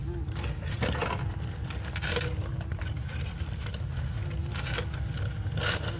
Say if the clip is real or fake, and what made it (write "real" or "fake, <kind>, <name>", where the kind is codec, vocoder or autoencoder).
real